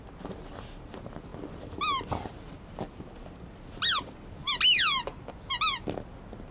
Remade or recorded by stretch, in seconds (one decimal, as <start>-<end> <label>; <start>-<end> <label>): 0.0-6.5 recorded